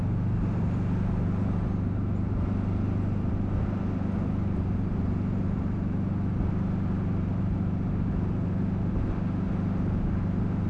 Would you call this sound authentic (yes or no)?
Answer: yes